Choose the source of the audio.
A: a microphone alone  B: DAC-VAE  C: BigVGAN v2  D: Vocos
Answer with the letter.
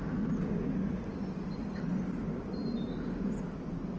A